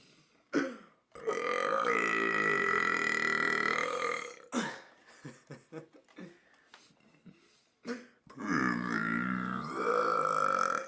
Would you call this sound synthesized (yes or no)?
no